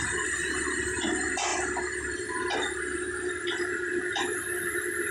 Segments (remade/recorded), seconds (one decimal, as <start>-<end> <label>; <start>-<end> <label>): 0.0-5.1 recorded